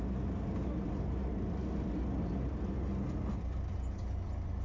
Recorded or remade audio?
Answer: recorded